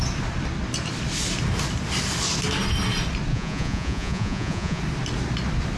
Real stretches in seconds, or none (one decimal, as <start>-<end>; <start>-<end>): 0.0-3.3; 4.8-5.8